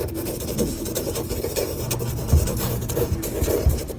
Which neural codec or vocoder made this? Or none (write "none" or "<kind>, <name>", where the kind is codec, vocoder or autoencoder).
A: vocoder, BigVGAN v2